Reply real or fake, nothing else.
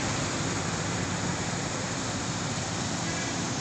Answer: fake